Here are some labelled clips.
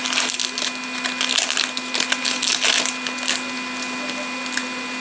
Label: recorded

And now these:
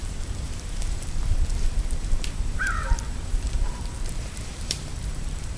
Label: remade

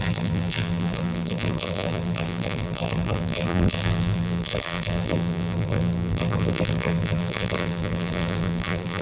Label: remade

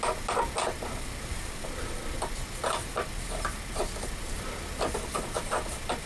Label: recorded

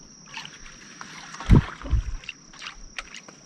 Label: remade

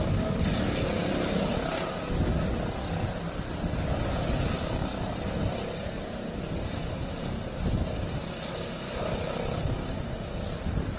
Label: recorded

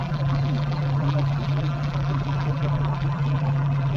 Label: remade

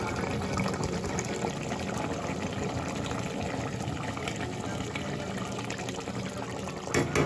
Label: recorded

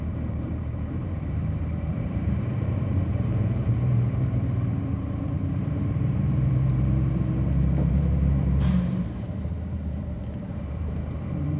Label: remade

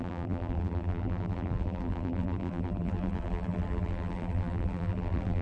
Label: remade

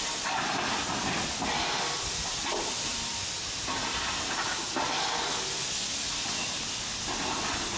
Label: recorded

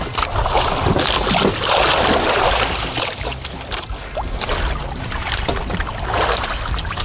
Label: remade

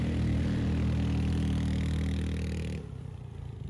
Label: recorded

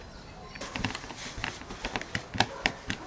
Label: recorded